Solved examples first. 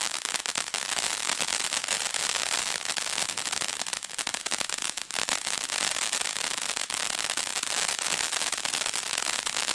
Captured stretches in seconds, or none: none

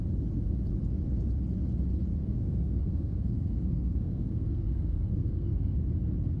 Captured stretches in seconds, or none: 0.0-2.2; 5.8-6.4

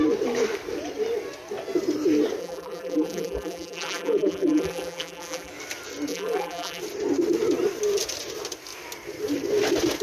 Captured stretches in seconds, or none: 0.0-2.4; 5.5-6.1; 6.8-10.0

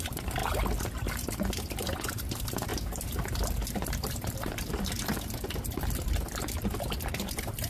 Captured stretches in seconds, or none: 0.4-2.1; 2.7-7.3

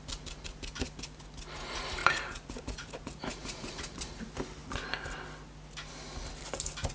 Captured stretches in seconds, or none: 0.0-2.0; 3.8-6.9

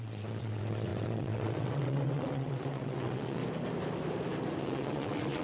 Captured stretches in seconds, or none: 3.4-4.6

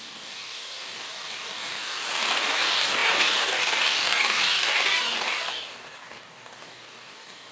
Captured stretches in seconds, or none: none

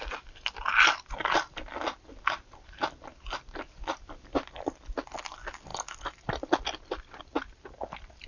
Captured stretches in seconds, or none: 0.0-8.3